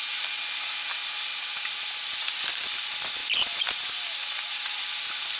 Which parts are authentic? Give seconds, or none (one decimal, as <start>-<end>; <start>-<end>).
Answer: 0.0-5.4